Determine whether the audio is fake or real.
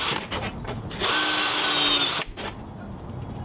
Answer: real